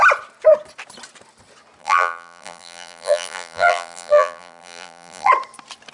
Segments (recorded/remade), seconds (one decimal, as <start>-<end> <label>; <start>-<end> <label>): 0.0-1.8 recorded; 1.8-5.3 remade; 5.3-5.9 recorded